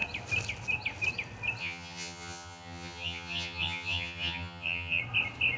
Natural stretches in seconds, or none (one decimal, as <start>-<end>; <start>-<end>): 0.0-1.6; 5.0-5.6

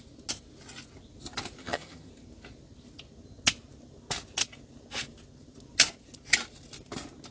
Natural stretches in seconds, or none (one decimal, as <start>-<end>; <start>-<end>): 0.0-1.6; 2.1-7.3

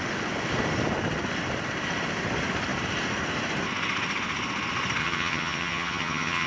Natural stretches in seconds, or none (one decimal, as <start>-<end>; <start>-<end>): 0.0-5.0

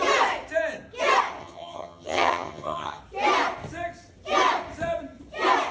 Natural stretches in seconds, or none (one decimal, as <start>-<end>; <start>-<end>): 0.0-1.4; 3.0-5.7